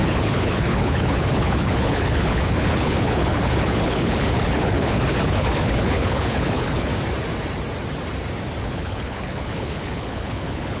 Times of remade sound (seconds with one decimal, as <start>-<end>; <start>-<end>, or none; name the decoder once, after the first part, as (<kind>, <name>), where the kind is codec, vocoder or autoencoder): 0.0-6.9 (codec, HILCodec); 8.6-10.8